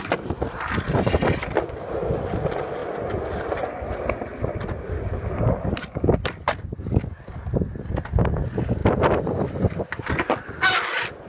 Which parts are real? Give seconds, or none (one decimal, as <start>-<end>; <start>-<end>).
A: 0.0-8.8; 9.8-11.3